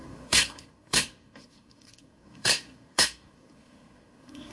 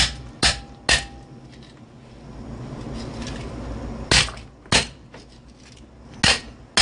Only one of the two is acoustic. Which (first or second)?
second